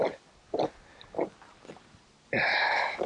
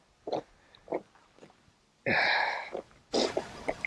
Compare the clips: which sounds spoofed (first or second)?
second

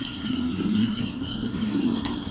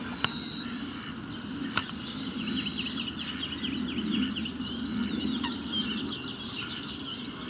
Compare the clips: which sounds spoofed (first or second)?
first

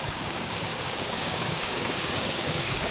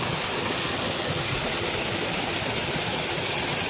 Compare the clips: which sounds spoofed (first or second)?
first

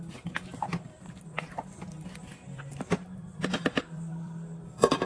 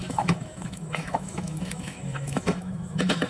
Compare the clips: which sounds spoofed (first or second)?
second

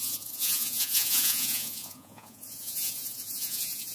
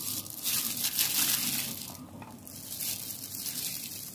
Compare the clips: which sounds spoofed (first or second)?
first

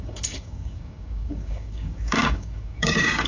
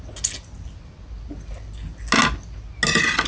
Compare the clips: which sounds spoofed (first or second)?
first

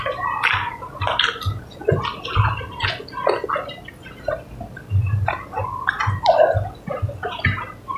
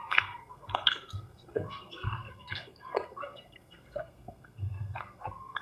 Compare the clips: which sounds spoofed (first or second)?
second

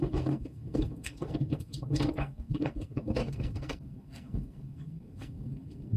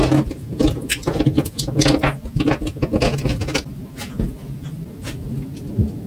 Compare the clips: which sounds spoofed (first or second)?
first